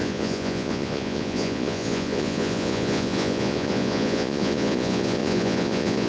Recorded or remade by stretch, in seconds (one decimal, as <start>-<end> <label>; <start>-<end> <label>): 0.0-6.1 remade